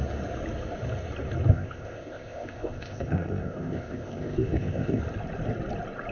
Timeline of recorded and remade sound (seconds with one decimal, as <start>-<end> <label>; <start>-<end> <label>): 0.0-1.5 recorded; 1.5-5.0 remade; 5.0-6.1 recorded